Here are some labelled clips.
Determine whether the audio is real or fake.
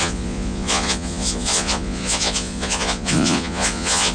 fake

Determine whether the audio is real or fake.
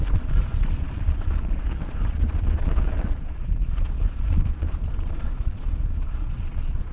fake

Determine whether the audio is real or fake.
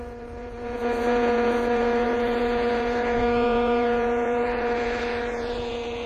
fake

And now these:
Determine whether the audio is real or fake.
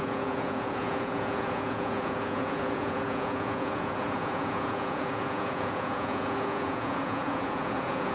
fake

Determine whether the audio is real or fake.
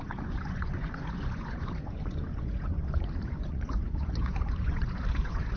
fake